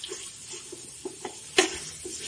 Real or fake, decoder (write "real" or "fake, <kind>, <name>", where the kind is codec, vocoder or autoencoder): real